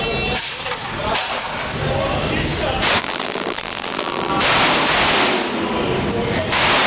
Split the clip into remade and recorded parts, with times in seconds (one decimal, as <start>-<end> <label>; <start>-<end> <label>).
0.0-3.0 recorded; 3.0-4.3 remade; 4.3-6.9 recorded